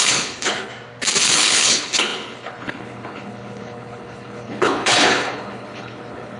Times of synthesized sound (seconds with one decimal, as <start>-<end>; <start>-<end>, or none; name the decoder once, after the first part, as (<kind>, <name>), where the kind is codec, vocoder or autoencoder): 0.0-0.7 (codec, HILCodec); 1.2-6.4